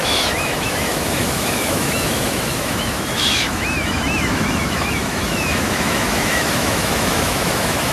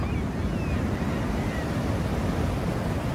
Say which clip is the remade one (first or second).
first